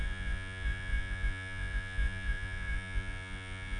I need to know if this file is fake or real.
fake